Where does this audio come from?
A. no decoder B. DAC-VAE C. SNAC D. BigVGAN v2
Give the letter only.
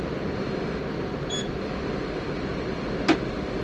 A